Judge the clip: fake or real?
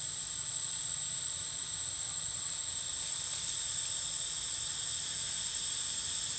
real